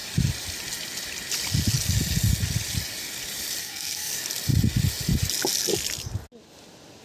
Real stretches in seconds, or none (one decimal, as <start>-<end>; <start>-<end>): 0.0-3.6; 4.1-7.0